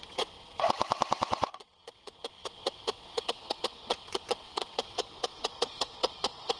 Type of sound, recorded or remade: remade